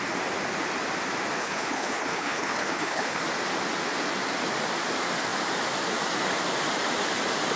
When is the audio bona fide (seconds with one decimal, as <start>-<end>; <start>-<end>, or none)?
0.0-1.4; 3.2-7.6

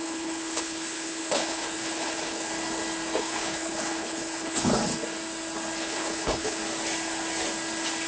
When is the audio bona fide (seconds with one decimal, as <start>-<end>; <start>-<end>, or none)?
2.5-3.2; 4.7-5.8; 6.6-8.1

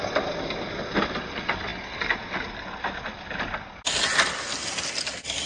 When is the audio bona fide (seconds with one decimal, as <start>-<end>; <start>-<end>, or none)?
0.0-5.5

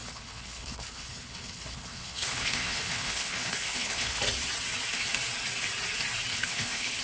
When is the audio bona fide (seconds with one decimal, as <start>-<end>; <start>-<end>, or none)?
4.2-6.3

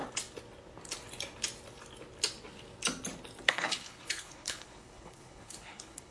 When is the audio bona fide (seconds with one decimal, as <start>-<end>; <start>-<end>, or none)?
0.0-3.5

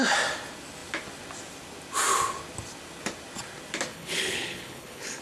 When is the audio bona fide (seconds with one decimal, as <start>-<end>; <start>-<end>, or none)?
0.0-3.9

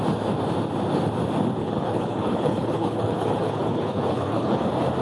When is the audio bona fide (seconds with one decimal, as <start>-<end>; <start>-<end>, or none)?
0.0-1.6; 4.6-5.0

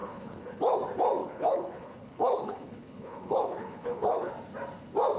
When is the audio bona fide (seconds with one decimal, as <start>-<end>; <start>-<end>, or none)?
0.6-1.2; 4.3-5.2